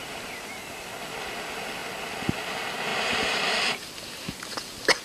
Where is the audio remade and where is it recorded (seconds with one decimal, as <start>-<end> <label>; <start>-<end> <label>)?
0.0-0.6 remade; 0.6-2.9 recorded; 2.9-3.9 remade; 3.9-5.0 recorded

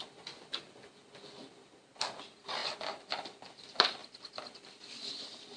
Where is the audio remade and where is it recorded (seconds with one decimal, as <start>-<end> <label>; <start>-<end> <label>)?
0.0-5.6 remade

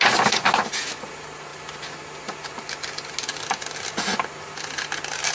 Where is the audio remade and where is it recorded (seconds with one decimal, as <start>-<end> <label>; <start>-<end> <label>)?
0.0-5.3 recorded